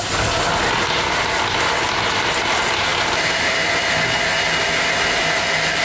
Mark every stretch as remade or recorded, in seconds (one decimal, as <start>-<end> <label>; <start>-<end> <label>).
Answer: 0.0-5.8 recorded